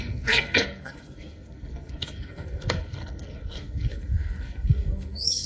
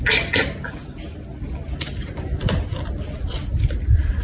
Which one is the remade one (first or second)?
first